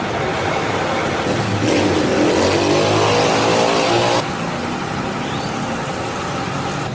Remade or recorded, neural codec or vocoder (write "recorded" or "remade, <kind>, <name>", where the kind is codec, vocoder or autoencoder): recorded